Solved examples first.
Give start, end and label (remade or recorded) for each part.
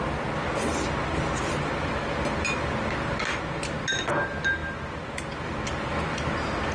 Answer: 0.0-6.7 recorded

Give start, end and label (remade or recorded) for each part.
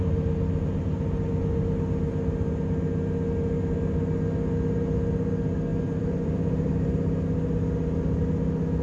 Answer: 0.0-5.7 recorded; 5.7-6.7 remade; 6.7-8.8 recorded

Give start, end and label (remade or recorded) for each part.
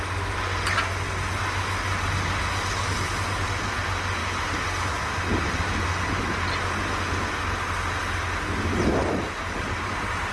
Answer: 0.0-10.3 recorded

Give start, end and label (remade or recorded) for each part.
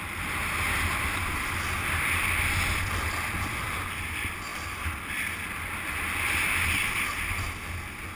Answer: 0.0-8.2 recorded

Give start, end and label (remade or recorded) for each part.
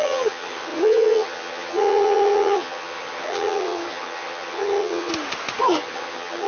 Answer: 0.0-5.1 remade; 5.1-5.6 recorded; 5.6-6.5 remade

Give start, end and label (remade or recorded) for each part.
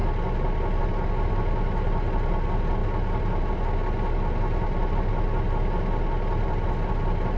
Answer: 0.0-7.4 recorded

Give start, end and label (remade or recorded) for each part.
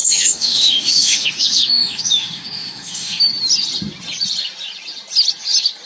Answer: 0.0-3.2 remade; 3.2-5.9 recorded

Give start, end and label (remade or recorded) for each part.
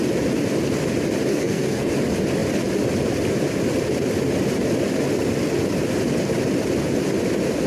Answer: 0.0-1.3 recorded; 1.3-1.9 remade; 1.9-7.7 recorded